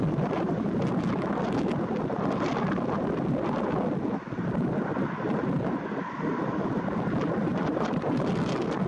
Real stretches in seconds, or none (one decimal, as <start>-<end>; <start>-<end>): 0.0-7.5; 8.1-8.9